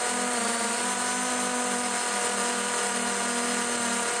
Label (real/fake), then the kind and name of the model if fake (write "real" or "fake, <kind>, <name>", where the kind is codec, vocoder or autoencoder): real